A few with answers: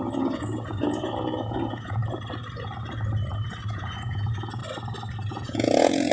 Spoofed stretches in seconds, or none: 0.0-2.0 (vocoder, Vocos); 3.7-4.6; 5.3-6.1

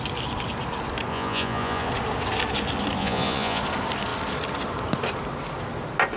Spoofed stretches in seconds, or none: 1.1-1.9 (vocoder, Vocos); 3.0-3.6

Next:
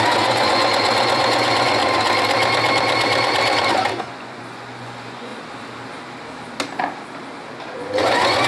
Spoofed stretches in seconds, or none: 0.0-1.8 (vocoder, Vocos); 4.0-5.3; 8.0-8.5